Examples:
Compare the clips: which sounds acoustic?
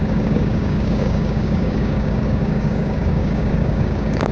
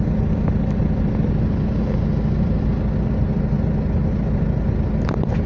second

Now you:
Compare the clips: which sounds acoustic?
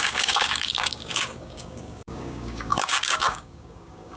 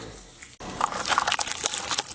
second